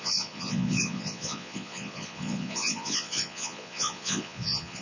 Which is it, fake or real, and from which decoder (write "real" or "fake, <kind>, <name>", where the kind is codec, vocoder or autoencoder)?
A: fake, vocoder, Vocos